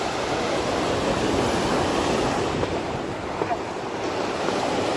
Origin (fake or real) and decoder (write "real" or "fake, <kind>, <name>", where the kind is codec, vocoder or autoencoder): real